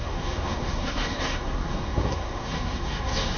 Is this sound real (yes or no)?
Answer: no